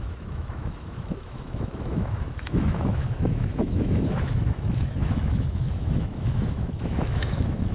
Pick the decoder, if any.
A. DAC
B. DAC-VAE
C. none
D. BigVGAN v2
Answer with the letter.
B